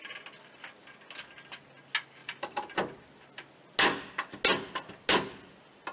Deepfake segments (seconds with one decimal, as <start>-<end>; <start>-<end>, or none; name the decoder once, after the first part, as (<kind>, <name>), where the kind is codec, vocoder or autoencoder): 2.2-2.8 (vocoder, BigVGAN v2)